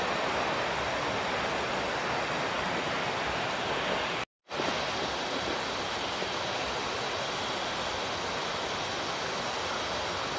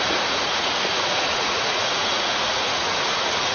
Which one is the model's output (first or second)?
second